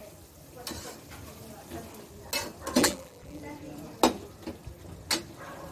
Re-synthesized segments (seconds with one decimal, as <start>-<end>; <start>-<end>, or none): 2.8-3.4